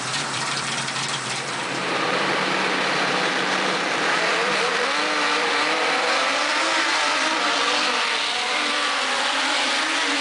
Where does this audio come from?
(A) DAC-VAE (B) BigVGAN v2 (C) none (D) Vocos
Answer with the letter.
B